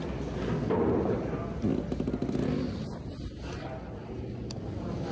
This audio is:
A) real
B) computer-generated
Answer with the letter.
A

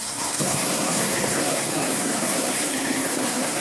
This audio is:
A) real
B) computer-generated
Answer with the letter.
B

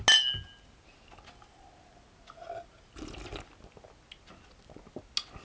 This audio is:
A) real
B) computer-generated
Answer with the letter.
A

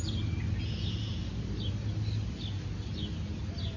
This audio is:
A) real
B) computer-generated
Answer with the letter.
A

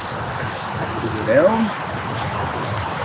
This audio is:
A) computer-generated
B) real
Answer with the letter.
B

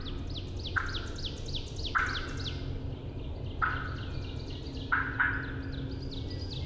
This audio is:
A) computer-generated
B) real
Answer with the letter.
B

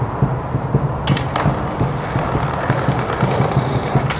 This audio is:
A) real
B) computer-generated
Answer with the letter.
A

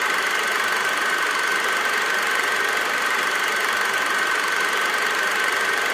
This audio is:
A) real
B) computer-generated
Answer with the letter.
B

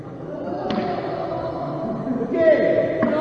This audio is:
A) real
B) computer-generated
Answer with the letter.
A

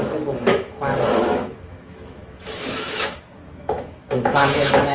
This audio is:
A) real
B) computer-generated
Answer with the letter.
B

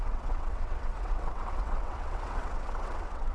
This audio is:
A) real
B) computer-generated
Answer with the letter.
B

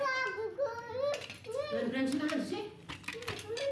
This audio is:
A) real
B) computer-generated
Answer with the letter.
A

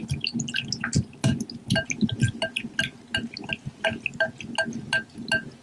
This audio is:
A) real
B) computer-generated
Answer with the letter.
A